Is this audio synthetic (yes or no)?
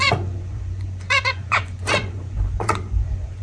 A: yes